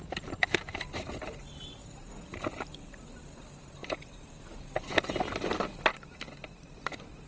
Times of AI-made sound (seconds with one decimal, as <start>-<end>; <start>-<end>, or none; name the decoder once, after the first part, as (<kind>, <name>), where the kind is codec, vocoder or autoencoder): 1.8-3.0 (vocoder, BigVGAN v2); 3.8-4.4

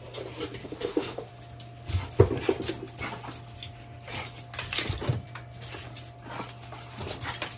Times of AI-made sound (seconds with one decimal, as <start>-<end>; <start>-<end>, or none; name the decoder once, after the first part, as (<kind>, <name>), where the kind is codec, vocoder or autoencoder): 0.6-1.3 (autoencoder, DAC-VAE)

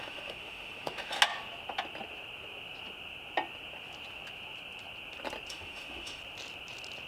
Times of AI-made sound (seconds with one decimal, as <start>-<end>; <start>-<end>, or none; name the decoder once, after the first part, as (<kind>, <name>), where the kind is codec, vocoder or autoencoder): 0.0-1.2 (autoencoder, DAC-VAE); 5.5-6.2